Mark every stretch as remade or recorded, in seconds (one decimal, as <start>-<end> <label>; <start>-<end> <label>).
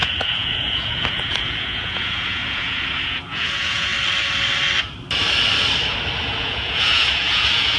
0.0-3.9 remade; 3.9-6.2 recorded; 6.2-7.8 remade